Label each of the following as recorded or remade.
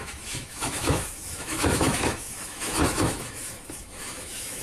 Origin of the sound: remade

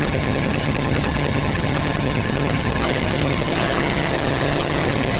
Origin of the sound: remade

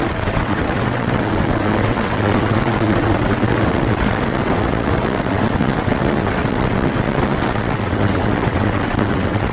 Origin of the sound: remade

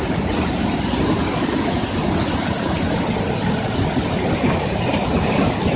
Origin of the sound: recorded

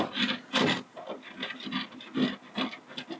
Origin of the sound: recorded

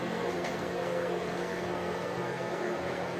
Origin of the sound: remade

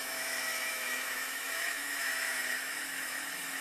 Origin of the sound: remade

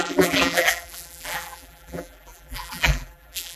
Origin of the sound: remade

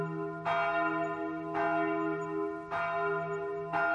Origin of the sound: recorded